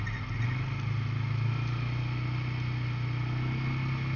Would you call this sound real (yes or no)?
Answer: yes